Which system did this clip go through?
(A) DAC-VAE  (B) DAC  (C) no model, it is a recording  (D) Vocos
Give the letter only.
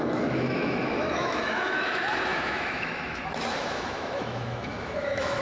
A